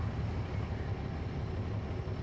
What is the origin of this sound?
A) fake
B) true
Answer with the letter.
B